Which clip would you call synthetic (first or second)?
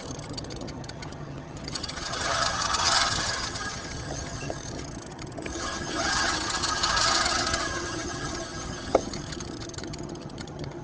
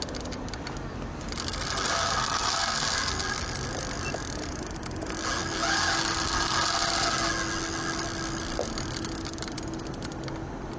first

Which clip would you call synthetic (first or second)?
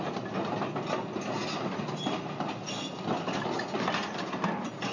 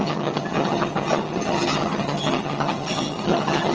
second